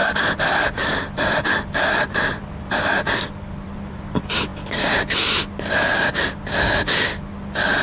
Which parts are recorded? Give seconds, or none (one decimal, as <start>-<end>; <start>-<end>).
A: 4.0-7.8